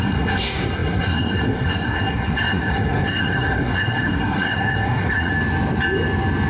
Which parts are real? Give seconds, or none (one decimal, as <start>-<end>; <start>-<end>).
5.3-6.5